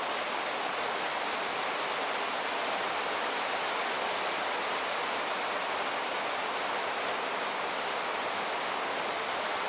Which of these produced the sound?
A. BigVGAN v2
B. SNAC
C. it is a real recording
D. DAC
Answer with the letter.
C